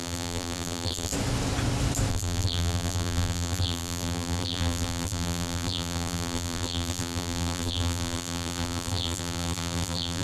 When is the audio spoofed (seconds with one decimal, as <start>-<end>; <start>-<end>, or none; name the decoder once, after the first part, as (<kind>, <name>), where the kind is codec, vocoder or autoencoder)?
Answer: 0.0-1.1 (vocoder, BigVGAN v2); 2.1-10.2